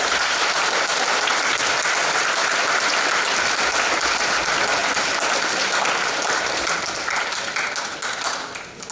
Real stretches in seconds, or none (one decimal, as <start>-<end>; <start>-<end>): 0.0-8.9